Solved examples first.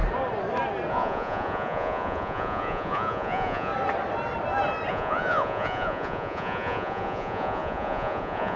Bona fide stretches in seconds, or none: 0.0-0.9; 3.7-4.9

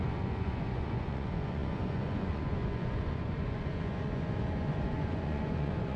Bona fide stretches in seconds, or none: none

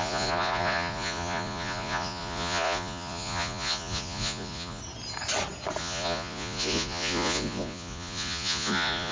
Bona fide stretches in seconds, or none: 4.8-5.8